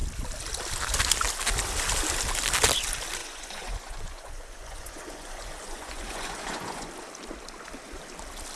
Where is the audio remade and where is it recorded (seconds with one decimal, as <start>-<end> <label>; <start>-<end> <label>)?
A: 0.0-3.2 recorded; 3.2-6.9 remade; 6.9-8.6 recorded